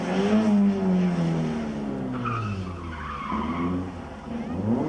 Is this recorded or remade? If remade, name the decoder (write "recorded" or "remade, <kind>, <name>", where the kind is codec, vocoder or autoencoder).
recorded